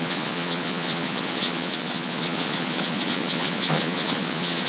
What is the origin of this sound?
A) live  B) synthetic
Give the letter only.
B